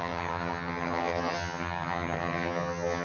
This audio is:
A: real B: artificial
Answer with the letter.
B